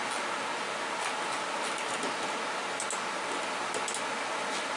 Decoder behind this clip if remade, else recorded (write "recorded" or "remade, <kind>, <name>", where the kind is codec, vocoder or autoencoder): recorded